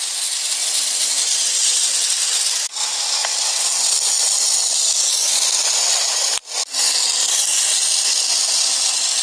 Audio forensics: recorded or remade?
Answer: recorded